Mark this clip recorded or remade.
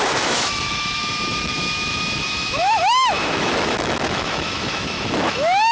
remade